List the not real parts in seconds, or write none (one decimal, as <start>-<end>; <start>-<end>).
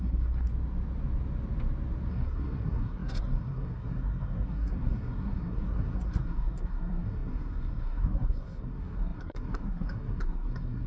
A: 0.0-0.5; 2.1-10.9